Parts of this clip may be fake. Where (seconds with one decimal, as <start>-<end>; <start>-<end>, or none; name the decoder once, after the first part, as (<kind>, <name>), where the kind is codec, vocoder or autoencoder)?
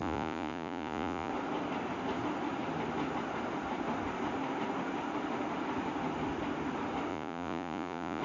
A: 0.0-1.3 (vocoder, Vocos); 7.1-8.2